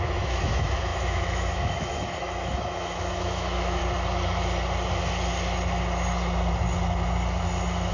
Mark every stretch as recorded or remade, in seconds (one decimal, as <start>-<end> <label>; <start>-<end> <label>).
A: 0.0-3.8 remade; 3.8-7.9 recorded